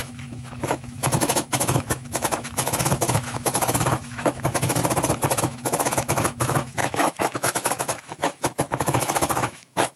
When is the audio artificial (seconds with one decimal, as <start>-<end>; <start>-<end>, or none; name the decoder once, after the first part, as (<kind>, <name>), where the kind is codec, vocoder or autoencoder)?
0.0-4.8 (autoencoder, DAC-VAE); 5.4-10.0